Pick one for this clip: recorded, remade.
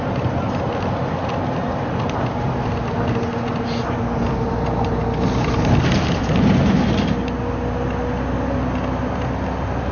recorded